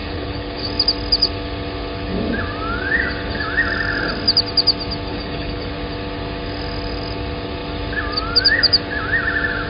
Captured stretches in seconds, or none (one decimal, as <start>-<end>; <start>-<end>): 0.7-5.1; 5.7-9.7